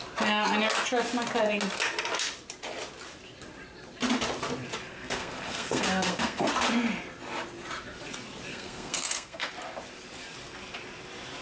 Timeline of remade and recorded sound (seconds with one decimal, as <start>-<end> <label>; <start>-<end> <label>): 0.0-4.9 recorded; 4.9-6.5 remade; 6.5-8.5 recorded; 8.5-9.5 remade; 9.5-11.4 recorded